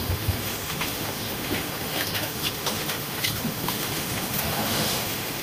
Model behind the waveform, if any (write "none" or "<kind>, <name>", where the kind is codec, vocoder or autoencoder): autoencoder, DAC-VAE